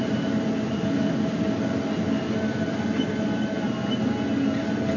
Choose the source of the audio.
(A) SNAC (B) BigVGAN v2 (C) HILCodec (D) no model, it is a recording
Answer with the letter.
D